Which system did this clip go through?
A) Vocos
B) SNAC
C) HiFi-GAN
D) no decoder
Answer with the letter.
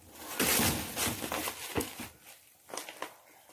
D